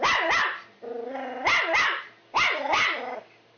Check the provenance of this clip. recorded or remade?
remade